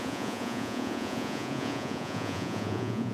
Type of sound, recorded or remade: remade